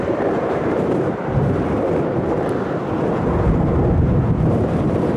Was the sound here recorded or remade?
remade